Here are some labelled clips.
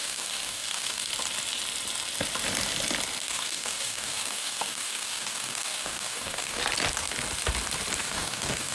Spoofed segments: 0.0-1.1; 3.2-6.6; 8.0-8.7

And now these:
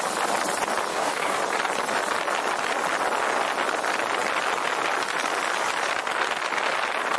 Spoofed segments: 0.9-1.4

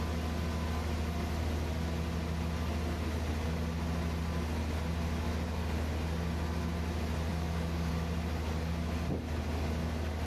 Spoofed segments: 7.3-7.9

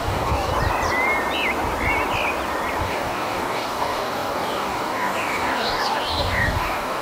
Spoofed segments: 0.0-0.5; 2.8-7.0